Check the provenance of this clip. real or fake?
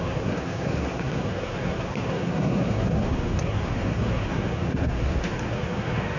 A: fake